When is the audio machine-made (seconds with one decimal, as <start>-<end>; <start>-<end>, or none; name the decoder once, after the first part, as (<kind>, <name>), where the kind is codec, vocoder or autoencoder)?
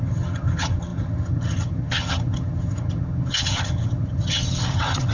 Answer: 0.0-5.1 (vocoder, HiFi-GAN)